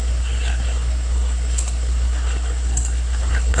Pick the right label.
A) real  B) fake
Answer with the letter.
B